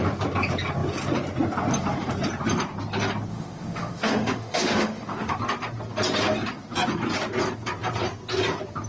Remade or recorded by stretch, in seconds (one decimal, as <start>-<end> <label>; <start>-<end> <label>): 0.0-3.3 recorded; 3.3-5.4 remade; 5.4-8.9 recorded